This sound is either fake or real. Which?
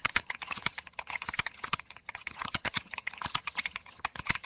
fake